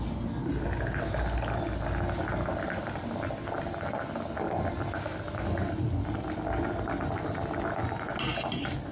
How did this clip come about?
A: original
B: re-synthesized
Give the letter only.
A